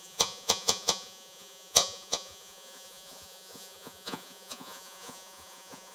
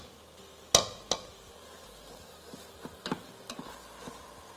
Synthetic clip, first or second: first